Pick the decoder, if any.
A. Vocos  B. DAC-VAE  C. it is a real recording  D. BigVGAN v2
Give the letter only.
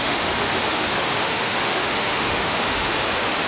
B